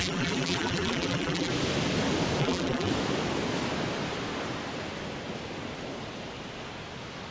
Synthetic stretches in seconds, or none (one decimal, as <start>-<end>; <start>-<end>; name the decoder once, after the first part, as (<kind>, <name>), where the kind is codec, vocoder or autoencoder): 0.0-1.5 (vocoder, BigVGAN v2); 2.4-2.9